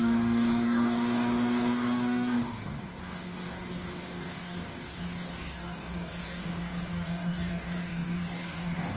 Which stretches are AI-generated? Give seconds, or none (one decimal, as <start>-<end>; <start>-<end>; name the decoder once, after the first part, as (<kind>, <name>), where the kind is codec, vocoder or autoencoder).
0.0-9.0 (codec, DAC)